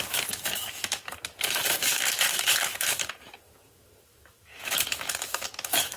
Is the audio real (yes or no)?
no